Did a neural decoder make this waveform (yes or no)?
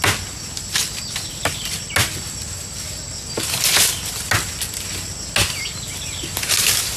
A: no